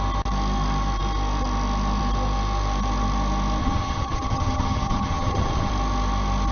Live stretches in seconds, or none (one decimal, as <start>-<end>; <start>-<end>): 0.0-3.6; 5.7-6.5